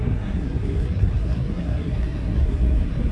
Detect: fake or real fake